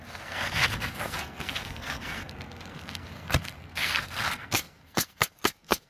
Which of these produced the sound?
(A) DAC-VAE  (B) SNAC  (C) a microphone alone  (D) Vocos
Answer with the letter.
B